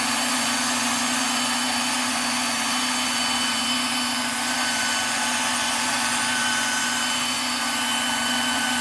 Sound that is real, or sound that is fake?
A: fake